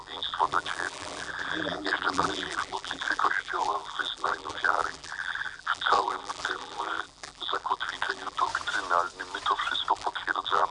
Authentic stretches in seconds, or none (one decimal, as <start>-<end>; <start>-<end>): 8.5-9.9